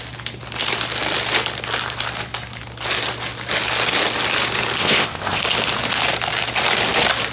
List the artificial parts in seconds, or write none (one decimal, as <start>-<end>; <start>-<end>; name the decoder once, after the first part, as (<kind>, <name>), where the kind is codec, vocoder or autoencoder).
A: 4.8-5.4 (codec, ZipCodec)